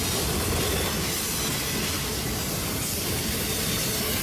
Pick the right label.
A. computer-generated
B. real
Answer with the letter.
B